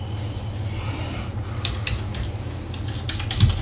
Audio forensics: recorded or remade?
recorded